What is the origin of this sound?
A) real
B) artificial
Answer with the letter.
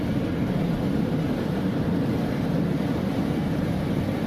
A